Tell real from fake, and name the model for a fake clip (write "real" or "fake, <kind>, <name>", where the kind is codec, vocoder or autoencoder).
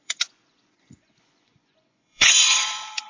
fake, vocoder, Vocos